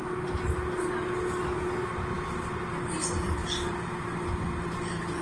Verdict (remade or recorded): recorded